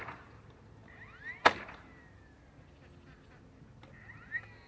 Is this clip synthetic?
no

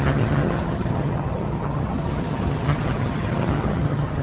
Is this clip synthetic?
yes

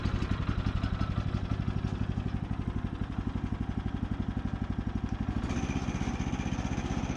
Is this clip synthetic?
no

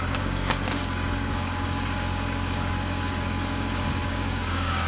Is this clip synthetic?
yes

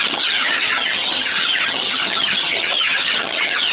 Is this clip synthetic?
yes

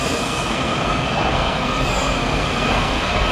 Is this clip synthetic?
yes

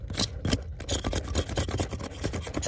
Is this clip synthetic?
no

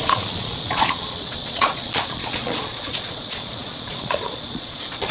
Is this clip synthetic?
yes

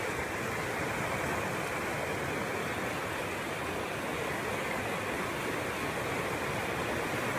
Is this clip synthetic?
no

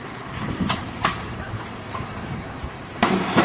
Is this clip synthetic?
yes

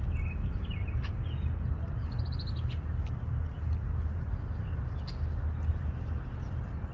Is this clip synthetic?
no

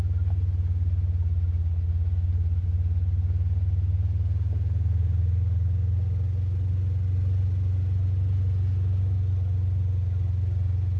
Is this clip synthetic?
no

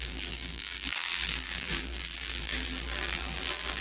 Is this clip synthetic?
yes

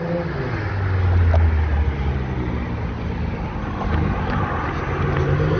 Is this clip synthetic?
no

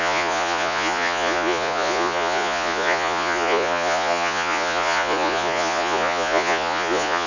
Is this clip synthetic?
yes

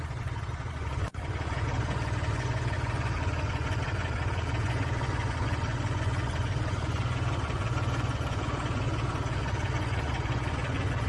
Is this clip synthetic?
yes